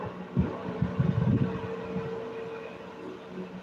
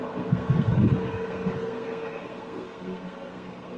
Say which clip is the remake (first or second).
second